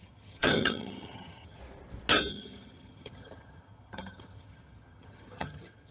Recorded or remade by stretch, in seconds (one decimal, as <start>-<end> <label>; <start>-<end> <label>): 0.0-1.6 remade; 1.6-2.3 recorded; 2.3-5.9 remade

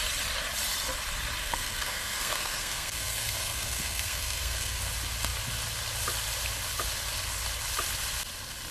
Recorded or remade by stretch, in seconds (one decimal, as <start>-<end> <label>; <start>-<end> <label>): 0.0-1.4 recorded; 1.4-4.8 remade; 4.8-8.7 recorded

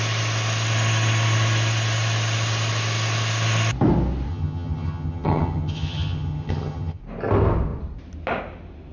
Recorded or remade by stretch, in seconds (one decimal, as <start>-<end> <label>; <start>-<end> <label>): 0.0-4.3 recorded; 4.3-7.0 remade; 7.0-8.9 recorded

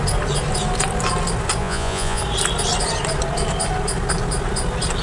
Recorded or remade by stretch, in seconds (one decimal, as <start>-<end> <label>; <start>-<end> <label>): 0.0-1.6 recorded; 1.6-2.2 remade; 2.2-5.0 recorded